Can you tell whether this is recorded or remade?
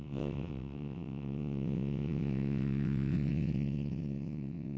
remade